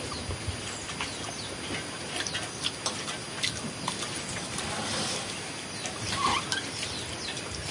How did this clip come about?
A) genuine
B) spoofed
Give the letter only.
A